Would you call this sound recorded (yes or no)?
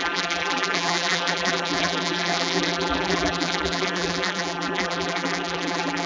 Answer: no